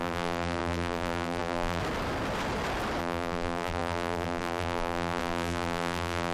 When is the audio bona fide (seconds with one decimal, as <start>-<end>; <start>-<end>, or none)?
1.8-3.0